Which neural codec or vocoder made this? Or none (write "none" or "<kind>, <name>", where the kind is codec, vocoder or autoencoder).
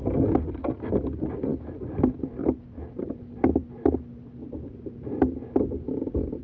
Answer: none